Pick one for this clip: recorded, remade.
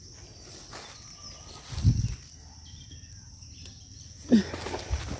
recorded